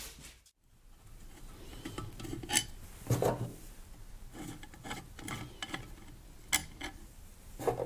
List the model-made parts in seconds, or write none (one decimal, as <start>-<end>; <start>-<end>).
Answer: none